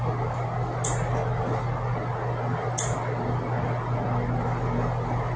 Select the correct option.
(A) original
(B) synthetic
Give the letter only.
A